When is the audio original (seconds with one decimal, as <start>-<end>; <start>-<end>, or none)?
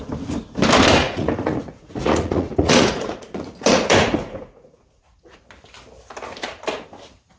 0.0-1.0; 5.4-7.4